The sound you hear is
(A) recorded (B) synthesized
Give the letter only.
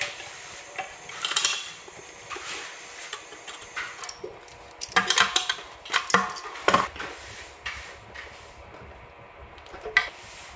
A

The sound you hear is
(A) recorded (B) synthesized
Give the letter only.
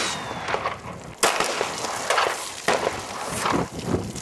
A